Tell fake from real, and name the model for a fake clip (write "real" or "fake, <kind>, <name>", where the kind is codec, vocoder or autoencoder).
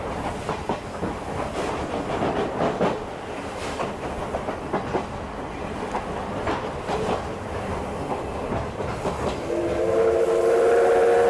real